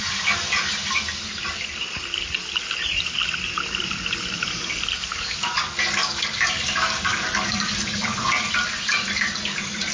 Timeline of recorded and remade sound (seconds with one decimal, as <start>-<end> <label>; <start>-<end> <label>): 0.0-5.1 recorded; 5.1-8.5 remade; 8.5-9.9 recorded